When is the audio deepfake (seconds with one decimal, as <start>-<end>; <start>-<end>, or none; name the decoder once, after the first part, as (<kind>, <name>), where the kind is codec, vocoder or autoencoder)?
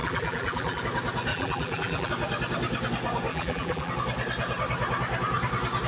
0.0-0.8 (vocoder, BigVGAN v2); 1.3-2.1; 3.3-3.9